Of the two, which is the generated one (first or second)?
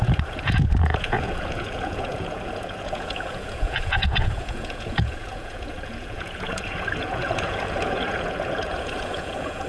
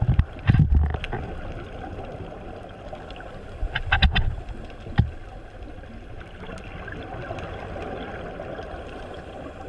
first